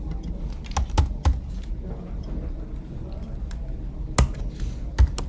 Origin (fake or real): real